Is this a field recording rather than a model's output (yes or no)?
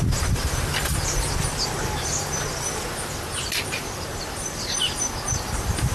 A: yes